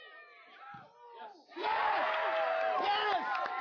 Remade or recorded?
recorded